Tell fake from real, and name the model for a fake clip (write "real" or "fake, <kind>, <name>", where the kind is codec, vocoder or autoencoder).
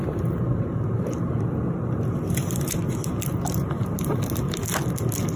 real